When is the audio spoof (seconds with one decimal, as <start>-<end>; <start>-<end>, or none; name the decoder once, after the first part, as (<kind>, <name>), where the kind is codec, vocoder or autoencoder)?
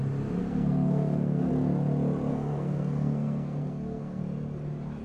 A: 0.4-1.5 (codec, SNAC); 2.3-4.2